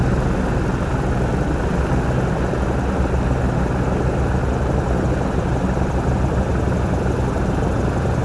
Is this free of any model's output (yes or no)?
yes